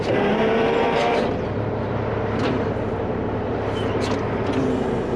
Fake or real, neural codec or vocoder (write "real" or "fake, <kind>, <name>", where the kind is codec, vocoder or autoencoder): fake, vocoder, BigVGAN v2